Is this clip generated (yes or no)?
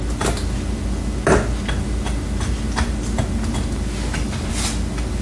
no